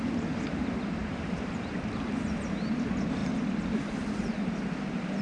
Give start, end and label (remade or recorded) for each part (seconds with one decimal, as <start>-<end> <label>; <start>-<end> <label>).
0.0-5.2 recorded